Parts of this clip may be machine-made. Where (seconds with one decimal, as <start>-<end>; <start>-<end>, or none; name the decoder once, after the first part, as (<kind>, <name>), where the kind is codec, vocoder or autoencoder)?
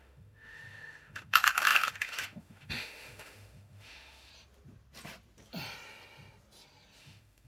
0.0-4.3 (autoencoder, DAC-VAE); 7.0-7.5